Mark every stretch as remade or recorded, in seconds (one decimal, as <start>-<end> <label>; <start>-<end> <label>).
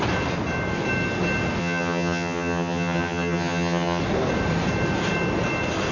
0.0-1.6 recorded; 1.6-4.0 remade; 4.0-5.9 recorded